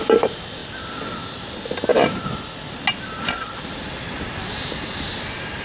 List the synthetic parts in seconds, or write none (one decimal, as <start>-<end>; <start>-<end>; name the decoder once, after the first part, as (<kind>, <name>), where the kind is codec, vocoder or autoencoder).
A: none